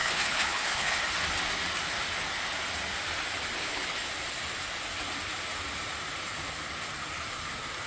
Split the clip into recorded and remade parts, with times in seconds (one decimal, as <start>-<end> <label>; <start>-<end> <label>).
0.0-1.0 remade; 1.0-3.6 recorded; 3.6-4.1 remade; 4.1-7.9 recorded